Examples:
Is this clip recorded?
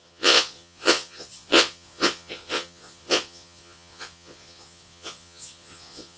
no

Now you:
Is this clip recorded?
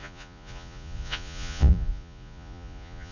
no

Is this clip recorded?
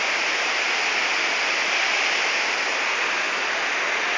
yes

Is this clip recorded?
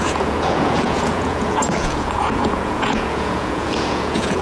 no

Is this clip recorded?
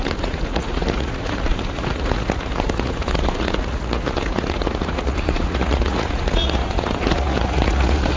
no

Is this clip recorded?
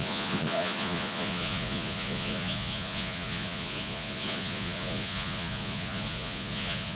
no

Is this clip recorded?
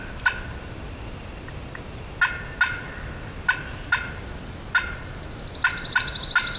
yes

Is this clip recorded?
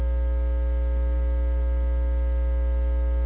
yes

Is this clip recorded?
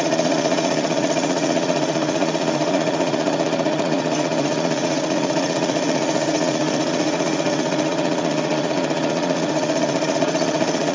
no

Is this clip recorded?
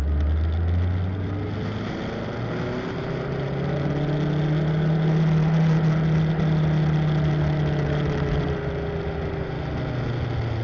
yes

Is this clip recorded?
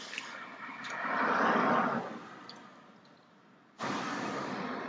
yes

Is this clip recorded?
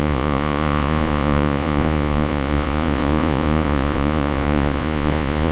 no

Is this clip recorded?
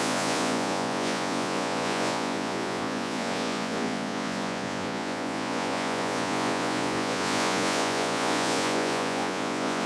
no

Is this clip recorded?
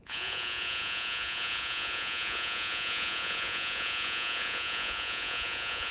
no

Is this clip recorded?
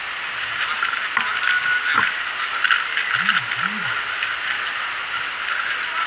yes